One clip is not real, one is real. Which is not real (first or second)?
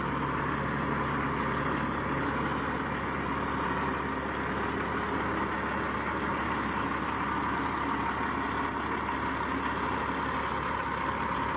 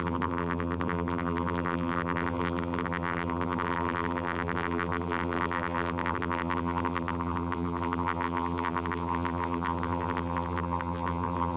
second